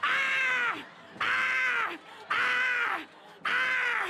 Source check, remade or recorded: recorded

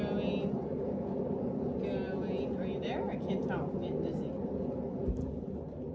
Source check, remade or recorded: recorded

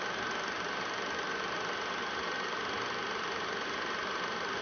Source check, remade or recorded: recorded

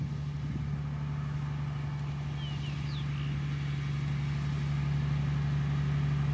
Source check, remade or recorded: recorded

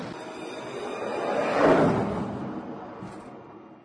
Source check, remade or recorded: recorded